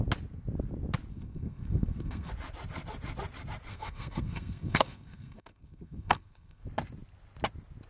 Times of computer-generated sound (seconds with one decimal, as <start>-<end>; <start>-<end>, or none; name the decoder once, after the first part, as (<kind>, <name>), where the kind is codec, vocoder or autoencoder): 1.1-2.3 (codec, SNAC); 3.7-6.6